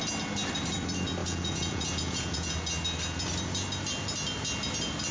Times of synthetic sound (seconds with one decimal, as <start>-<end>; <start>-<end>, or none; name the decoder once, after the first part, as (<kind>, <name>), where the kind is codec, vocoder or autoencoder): 1.2-2.5 (vocoder, Vocos)